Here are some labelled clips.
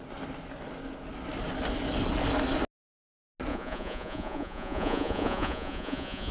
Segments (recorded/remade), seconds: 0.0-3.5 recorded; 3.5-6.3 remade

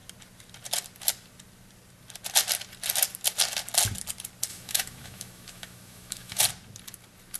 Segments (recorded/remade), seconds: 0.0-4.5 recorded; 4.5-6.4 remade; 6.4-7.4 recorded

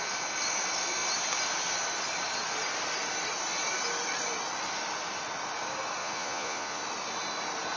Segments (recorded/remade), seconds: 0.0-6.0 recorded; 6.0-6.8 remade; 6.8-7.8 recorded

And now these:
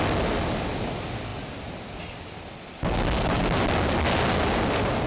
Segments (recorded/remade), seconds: 0.0-5.1 recorded

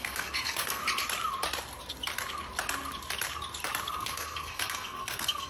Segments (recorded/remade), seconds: 0.0-0.8 remade; 0.8-3.9 recorded; 3.9-5.5 remade

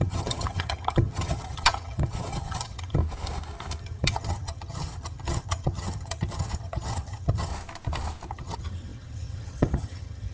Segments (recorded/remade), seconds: 0.0-3.0 remade; 3.0-3.8 recorded; 3.8-7.5 remade; 7.5-8.3 recorded; 8.3-10.3 remade

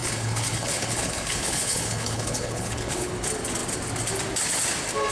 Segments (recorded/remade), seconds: 0.0-3.1 remade; 3.1-5.1 recorded

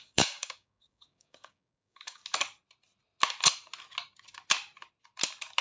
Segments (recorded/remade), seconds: 0.0-2.2 remade; 2.2-5.6 recorded